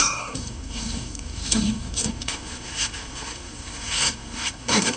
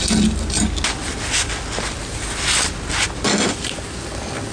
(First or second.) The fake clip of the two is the first